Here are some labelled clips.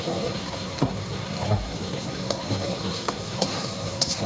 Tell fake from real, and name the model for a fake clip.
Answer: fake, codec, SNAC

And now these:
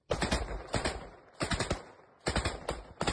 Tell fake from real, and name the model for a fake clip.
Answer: real